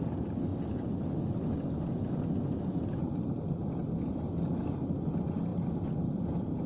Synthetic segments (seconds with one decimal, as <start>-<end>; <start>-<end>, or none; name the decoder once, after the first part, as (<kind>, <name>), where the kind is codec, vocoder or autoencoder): none